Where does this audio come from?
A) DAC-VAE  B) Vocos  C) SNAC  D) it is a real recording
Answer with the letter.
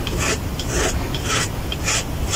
D